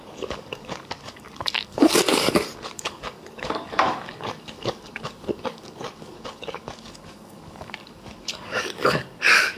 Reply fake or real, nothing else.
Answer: fake